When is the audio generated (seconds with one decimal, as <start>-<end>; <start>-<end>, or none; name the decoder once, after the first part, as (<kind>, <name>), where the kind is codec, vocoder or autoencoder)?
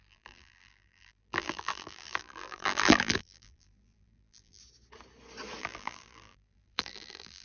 0.0-4.6 (vocoder, BigVGAN v2); 5.6-7.4